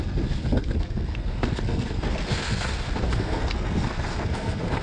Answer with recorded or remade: remade